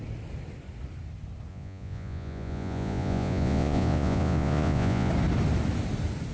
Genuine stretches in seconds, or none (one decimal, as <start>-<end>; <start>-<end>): 0.0-1.5; 5.1-6.3